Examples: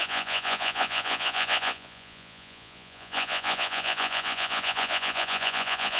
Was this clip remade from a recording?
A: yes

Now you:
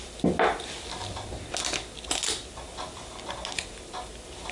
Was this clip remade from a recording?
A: no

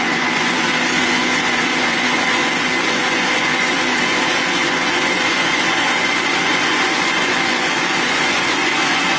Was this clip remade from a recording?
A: yes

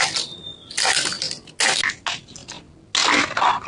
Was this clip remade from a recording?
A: no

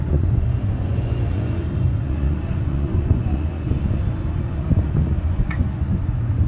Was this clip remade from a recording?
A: yes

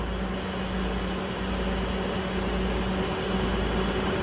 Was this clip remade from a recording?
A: no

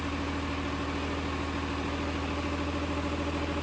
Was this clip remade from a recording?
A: no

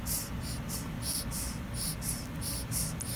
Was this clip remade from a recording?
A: no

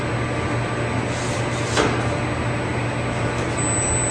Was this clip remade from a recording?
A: no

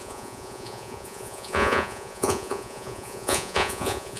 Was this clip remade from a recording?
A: yes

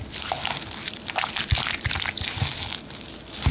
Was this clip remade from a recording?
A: no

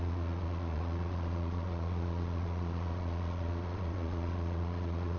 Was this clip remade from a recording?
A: yes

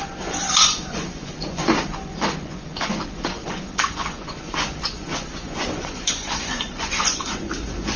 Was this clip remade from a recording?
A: yes